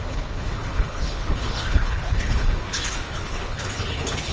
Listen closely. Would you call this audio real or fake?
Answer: fake